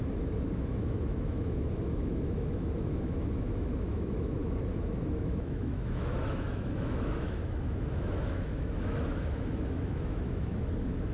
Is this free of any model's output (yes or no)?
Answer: no